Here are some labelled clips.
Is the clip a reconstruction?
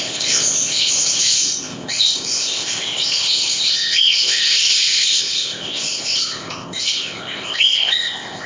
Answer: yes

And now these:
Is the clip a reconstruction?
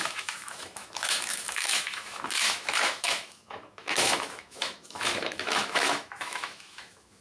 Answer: yes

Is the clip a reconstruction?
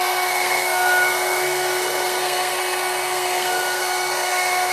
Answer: yes